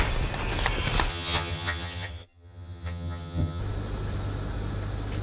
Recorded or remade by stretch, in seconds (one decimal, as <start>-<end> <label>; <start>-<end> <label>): 0.0-1.1 recorded; 1.1-3.6 remade; 3.6-5.2 recorded